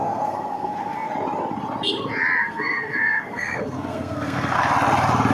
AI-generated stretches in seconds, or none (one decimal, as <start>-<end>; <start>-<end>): 0.0-1.1; 2.4-4.6